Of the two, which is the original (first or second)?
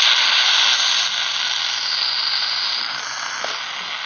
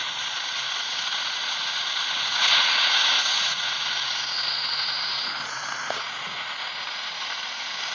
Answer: first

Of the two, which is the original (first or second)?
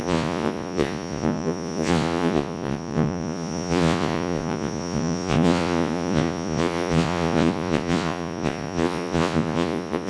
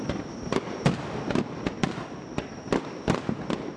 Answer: second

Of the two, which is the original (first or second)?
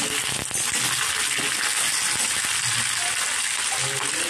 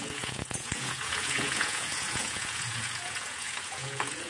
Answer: first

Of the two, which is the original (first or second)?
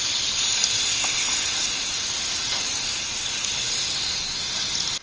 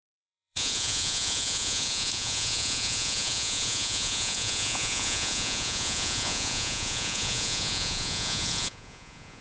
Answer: first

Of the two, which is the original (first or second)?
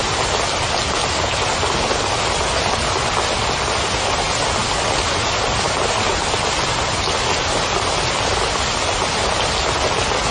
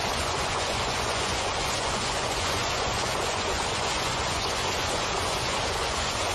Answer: first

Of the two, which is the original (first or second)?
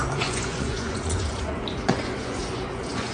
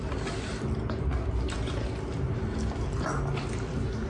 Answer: second